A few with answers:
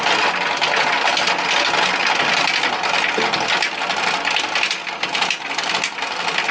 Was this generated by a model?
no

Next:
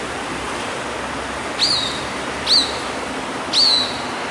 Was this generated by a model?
no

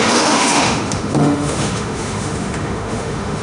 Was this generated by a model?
yes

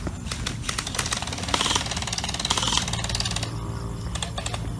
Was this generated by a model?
no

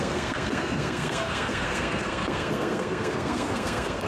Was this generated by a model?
yes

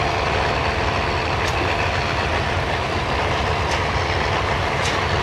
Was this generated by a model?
no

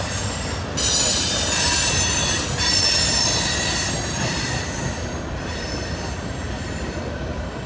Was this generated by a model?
no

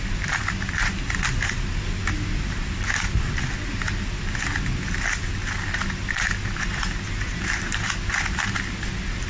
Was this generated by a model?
no